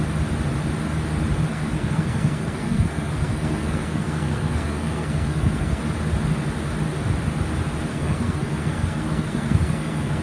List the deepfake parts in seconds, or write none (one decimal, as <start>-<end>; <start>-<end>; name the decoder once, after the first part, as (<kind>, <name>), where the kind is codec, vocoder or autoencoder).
1.5-5.8 (codec, SNAC); 7.9-10.2